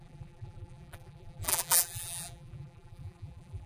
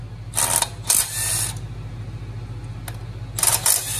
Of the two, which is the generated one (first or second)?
first